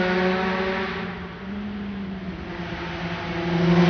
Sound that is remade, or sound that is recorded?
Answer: recorded